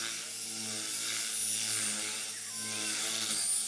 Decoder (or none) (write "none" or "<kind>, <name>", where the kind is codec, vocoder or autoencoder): none